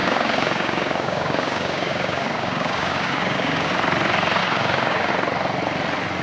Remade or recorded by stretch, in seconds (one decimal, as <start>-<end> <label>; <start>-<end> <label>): 0.0-3.7 remade; 3.7-4.4 recorded; 4.4-5.1 remade; 5.1-6.2 recorded